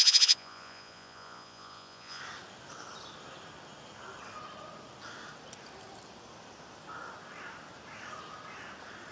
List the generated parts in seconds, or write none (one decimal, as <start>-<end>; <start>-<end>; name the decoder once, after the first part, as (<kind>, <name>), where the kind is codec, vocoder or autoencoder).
0.0-2.2 (vocoder, Vocos)